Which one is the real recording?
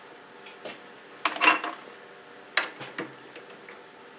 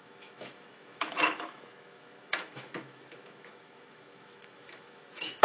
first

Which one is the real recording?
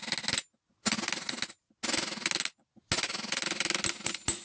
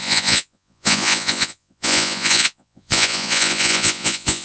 first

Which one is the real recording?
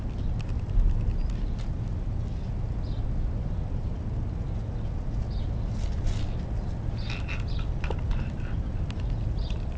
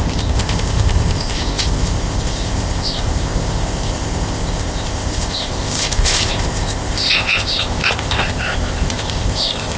first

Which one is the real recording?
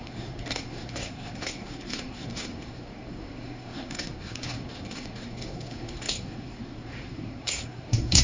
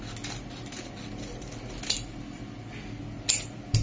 second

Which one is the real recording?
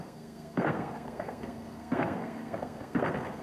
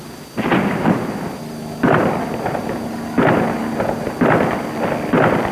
second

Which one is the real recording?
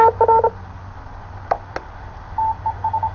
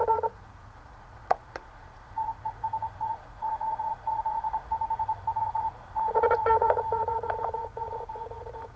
first